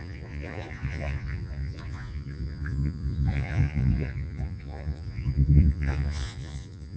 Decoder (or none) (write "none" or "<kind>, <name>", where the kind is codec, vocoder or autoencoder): vocoder, Vocos